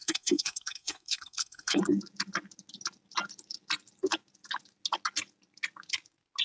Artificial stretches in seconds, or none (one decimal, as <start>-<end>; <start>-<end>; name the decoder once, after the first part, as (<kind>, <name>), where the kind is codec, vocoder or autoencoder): 0.0-1.8 (codec, SNAC)